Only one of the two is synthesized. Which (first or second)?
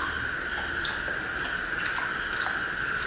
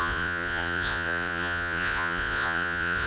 second